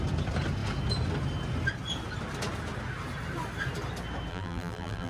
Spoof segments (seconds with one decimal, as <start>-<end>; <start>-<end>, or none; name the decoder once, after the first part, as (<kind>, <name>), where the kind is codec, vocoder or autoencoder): 4.3-5.1 (vocoder, BigVGAN v2)